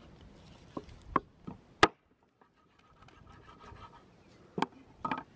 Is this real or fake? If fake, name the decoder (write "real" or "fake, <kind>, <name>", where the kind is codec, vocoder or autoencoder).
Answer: real